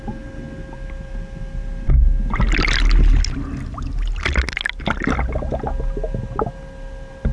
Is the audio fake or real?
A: real